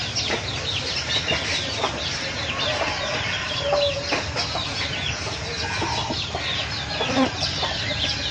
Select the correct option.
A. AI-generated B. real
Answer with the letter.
B